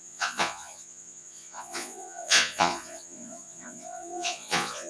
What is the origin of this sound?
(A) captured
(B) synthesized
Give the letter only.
B